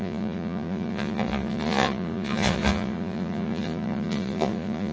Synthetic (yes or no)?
yes